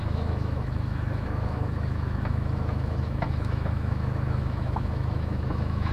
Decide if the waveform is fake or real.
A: fake